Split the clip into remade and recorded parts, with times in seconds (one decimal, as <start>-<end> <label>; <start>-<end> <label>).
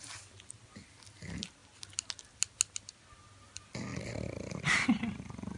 0.0-5.6 recorded